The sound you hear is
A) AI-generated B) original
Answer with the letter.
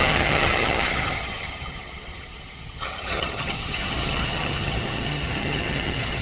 A